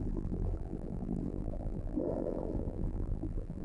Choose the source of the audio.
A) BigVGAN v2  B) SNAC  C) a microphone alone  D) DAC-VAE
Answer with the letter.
A